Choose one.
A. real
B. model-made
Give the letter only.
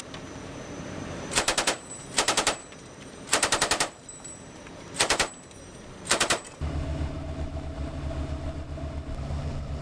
B